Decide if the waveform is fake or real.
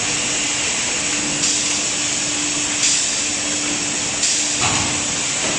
real